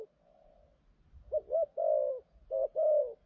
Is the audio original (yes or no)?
yes